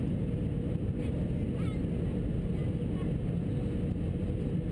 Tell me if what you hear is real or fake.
real